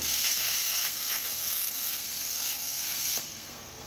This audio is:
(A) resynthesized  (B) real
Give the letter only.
A